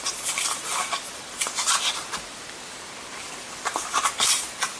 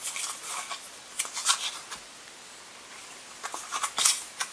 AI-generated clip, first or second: first